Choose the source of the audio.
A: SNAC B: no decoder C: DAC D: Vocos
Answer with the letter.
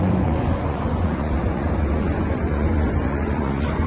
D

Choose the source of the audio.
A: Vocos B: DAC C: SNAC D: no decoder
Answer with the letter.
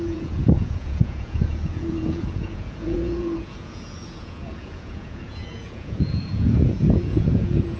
A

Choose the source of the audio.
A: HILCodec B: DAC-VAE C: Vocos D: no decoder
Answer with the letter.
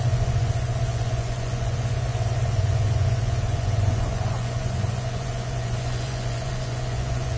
C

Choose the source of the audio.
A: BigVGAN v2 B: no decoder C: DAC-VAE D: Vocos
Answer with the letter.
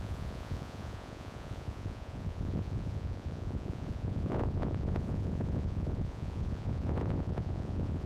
D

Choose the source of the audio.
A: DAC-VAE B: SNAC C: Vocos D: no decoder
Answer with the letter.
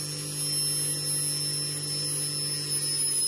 D